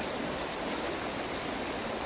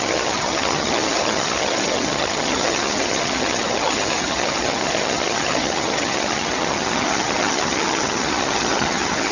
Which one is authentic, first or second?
first